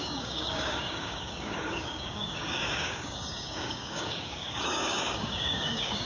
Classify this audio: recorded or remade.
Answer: remade